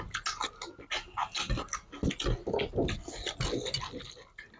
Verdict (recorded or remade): recorded